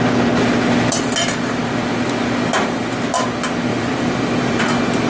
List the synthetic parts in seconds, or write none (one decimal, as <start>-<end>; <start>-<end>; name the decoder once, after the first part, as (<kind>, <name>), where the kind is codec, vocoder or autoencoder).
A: 3.7-4.6 (vocoder, BigVGAN v2)